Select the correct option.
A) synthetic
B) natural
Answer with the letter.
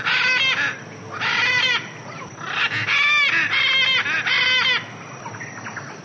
B